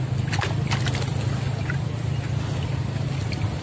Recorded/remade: recorded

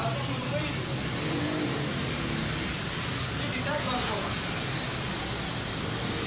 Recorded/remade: recorded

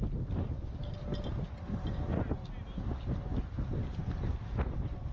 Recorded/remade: recorded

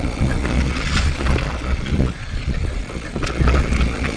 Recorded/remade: remade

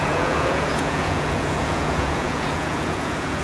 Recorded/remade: remade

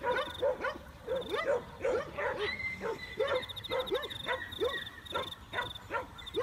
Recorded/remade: recorded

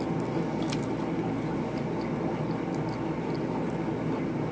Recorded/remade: recorded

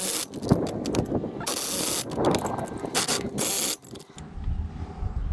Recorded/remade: recorded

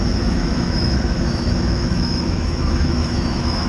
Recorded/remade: remade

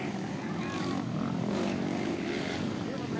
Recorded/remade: remade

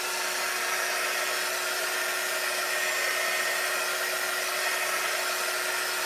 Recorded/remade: recorded